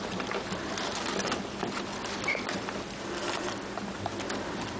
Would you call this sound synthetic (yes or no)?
no